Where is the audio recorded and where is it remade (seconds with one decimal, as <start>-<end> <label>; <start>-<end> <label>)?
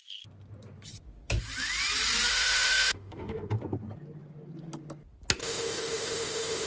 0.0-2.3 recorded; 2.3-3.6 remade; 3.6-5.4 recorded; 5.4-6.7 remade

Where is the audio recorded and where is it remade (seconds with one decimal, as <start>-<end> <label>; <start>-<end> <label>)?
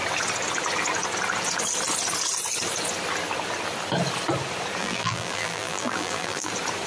0.0-4.8 recorded; 4.8-6.5 remade; 6.5-6.9 recorded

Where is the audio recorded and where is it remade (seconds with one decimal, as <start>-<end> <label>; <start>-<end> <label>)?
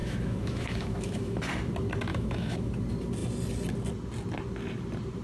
0.0-1.4 remade; 1.4-2.1 recorded; 2.1-2.7 remade; 2.7-5.2 recorded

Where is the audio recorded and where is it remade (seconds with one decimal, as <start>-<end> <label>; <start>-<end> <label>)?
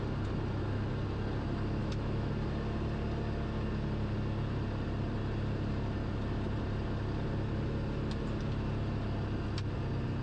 0.0-1.8 recorded; 1.8-2.3 remade; 2.3-10.2 recorded